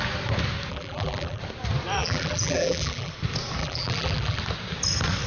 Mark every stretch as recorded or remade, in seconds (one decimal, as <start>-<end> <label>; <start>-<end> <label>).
0.0-0.7 recorded; 0.7-1.4 remade; 1.4-2.0 recorded; 2.0-3.1 remade; 3.1-3.6 recorded; 3.6-4.4 remade; 4.4-5.3 recorded